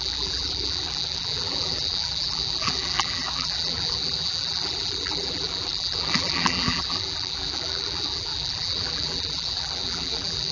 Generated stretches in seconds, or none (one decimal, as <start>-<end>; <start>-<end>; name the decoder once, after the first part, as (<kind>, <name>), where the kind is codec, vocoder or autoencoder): 0.0-10.5 (vocoder, BigVGAN v2)